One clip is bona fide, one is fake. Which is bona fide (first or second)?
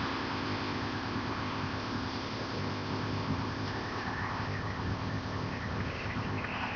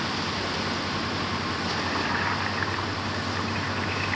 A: second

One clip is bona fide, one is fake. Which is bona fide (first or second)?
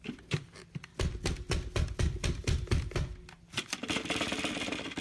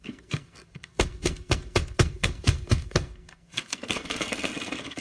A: first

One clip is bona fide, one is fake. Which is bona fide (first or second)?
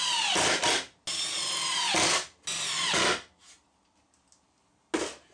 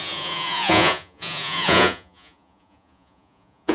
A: first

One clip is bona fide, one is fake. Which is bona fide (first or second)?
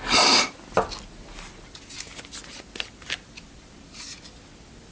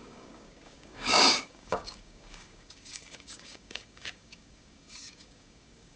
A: first